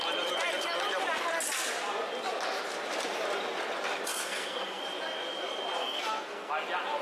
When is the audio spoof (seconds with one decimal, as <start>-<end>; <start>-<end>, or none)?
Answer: 4.1-4.8; 5.8-6.5